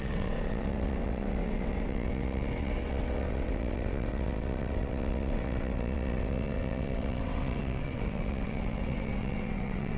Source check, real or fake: fake